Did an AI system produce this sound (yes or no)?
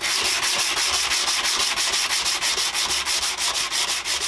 no